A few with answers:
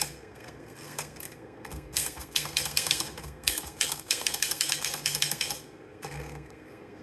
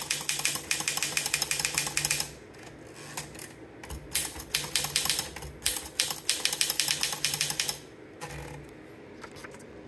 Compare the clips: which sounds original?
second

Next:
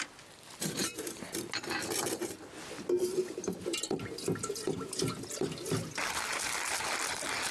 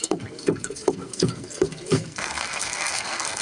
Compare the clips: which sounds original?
first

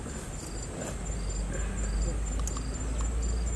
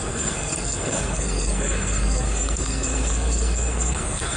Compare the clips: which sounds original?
first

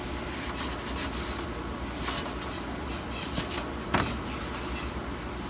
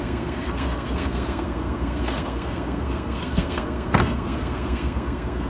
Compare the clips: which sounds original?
first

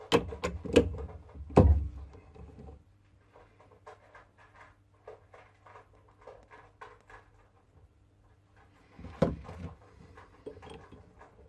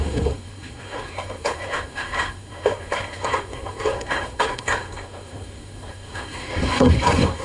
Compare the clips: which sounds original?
first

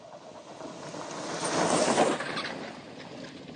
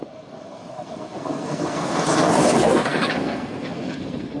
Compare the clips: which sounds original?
first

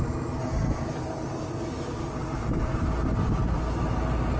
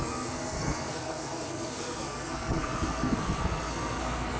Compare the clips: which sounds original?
first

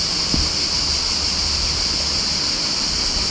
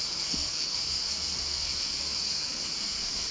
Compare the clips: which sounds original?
first